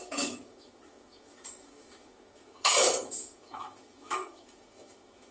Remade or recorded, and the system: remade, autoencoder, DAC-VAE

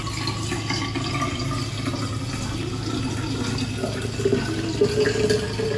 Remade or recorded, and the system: recorded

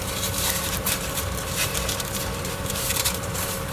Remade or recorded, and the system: remade, vocoder, BigVGAN v2